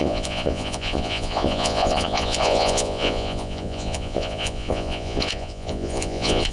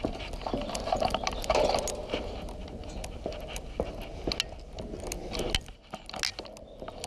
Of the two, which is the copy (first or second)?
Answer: first